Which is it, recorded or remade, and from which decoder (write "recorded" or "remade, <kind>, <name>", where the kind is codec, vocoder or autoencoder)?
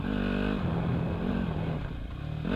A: recorded